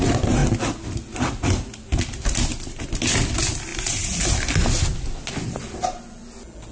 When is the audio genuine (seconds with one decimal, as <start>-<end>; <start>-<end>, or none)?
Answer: 0.0-6.7